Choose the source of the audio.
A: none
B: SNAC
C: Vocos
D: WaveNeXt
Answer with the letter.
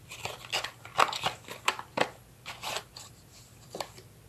A